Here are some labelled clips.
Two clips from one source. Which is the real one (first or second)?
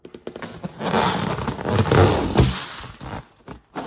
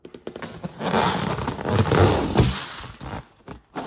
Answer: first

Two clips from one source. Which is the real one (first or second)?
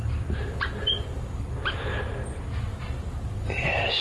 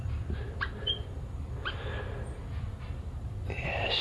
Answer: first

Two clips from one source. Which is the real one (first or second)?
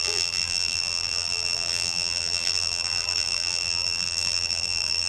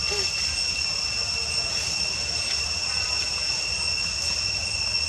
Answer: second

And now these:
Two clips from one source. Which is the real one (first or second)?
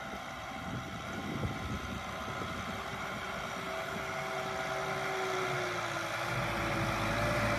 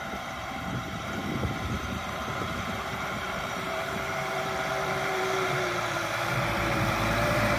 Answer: first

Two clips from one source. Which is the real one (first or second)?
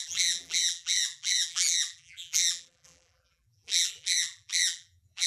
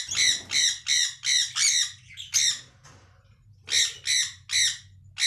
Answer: second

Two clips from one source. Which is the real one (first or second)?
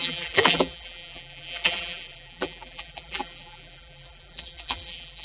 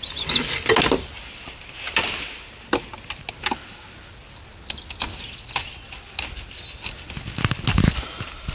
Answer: second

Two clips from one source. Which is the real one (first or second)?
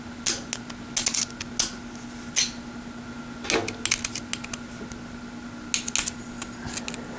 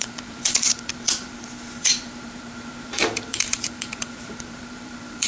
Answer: first